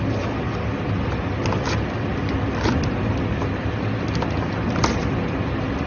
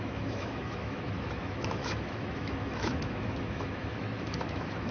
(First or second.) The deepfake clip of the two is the second